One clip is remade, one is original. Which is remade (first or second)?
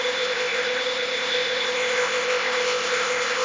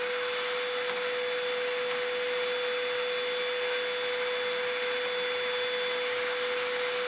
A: first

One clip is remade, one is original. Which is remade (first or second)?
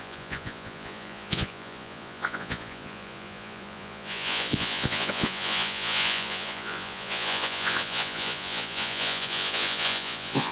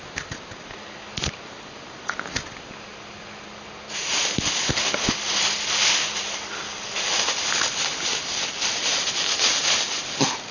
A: first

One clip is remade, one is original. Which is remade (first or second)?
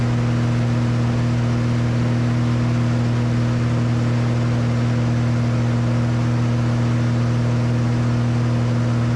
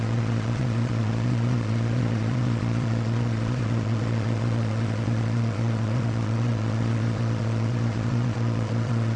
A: second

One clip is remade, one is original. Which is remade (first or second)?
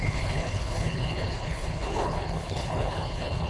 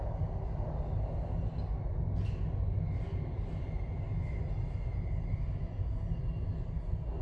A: first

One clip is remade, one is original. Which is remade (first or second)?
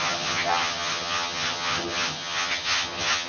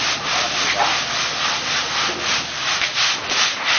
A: first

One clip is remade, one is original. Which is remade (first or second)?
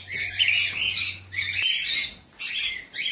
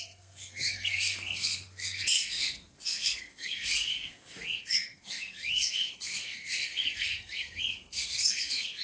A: second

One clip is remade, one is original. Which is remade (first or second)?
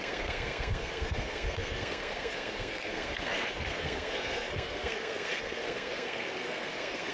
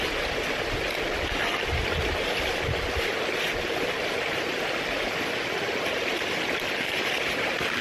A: first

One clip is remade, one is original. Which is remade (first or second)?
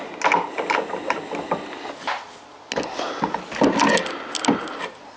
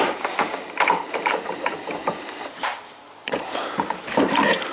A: second